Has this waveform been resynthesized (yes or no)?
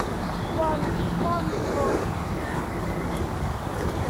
yes